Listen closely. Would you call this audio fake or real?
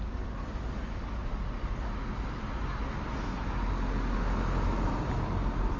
real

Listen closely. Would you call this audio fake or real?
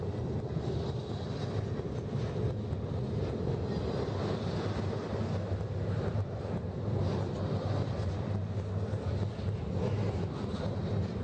real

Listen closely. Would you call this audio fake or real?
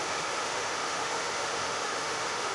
fake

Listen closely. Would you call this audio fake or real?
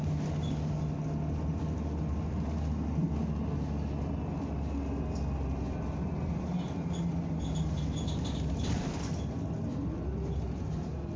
real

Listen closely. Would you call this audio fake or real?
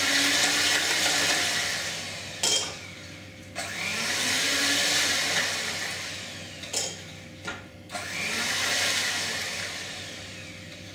real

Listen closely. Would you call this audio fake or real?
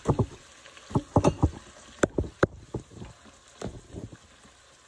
real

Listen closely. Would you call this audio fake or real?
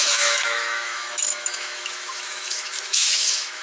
fake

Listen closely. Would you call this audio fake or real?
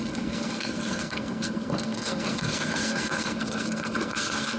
fake